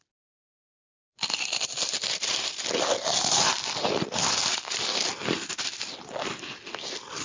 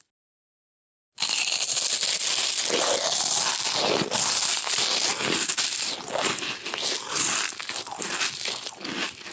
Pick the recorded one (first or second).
second